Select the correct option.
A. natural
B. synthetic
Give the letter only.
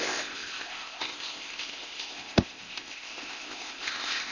B